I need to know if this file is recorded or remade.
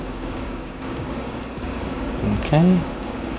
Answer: remade